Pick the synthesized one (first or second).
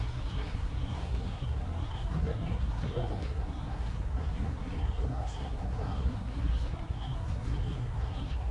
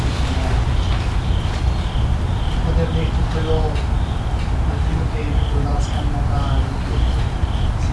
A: first